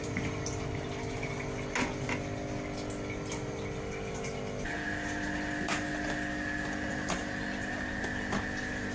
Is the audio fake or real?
real